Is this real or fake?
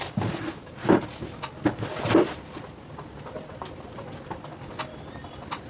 real